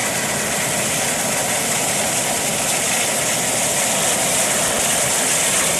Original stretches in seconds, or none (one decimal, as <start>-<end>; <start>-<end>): 0.0-5.8